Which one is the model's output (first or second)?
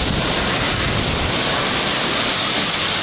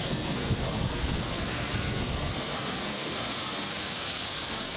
second